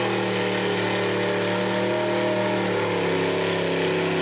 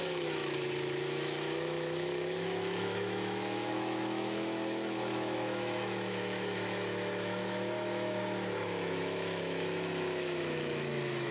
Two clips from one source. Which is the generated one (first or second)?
second